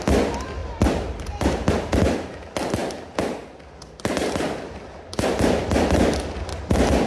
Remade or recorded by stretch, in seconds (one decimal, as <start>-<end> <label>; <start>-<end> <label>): 0.0-7.1 recorded